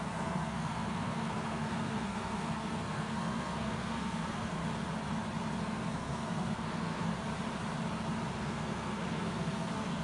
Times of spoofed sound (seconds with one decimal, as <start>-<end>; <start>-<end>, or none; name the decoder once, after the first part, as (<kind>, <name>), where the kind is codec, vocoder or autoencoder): 0.0-4.6 (codec, SNAC); 5.6-7.1; 8.4-10.0